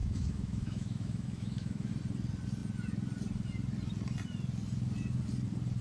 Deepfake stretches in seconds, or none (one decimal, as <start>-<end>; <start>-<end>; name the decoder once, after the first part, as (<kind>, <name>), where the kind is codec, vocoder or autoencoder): 0.0-1.9 (autoencoder, DAC-VAE)